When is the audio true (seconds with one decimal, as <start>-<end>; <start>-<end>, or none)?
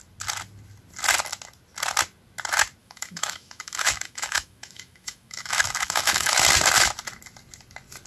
0.0-2.8; 6.3-8.1